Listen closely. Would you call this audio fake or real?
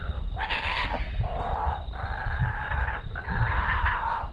real